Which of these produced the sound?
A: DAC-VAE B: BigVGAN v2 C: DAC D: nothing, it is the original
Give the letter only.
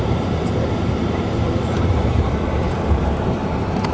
B